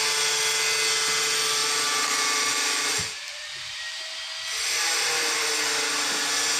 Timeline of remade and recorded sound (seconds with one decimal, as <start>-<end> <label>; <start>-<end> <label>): 0.0-1.6 recorded; 1.6-4.0 remade; 4.0-6.6 recorded